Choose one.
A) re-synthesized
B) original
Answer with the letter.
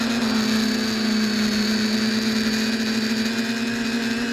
B